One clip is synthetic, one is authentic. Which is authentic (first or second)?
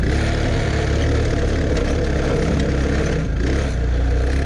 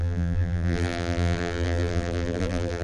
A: first